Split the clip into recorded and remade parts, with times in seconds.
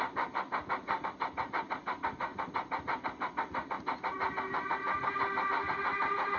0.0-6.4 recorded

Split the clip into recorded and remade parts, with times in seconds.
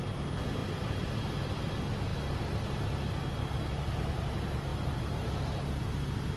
0.0-0.6 recorded; 0.6-1.7 remade; 1.7-4.7 recorded; 4.7-5.3 remade; 5.3-6.4 recorded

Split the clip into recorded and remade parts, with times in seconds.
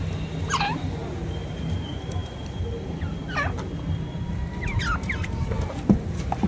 0.0-6.5 recorded